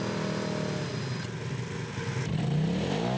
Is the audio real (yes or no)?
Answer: yes